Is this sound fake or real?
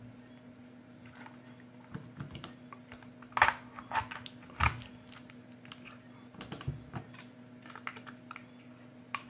real